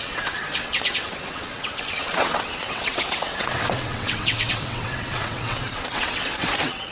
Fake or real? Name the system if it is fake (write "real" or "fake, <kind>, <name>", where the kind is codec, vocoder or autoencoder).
fake, vocoder, WaveNeXt